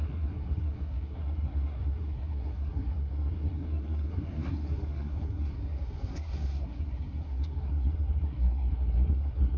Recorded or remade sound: remade